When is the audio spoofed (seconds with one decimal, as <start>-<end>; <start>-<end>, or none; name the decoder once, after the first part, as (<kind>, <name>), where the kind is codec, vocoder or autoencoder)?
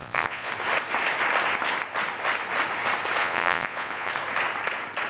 0.0-0.5 (vocoder, Vocos); 3.2-4.1